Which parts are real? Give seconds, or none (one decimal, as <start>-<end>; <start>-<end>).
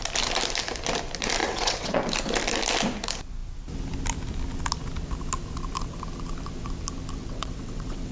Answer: 0.0-1.4; 2.0-7.2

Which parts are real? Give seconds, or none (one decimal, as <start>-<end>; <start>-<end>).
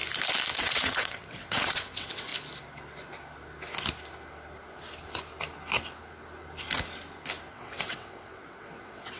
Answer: 0.0-0.6; 2.3-7.5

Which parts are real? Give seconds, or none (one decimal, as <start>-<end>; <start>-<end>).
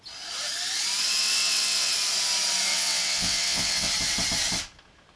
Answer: 0.0-1.2; 1.9-2.7; 3.9-5.2